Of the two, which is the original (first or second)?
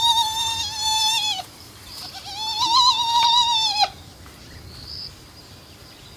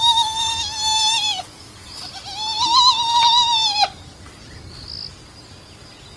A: second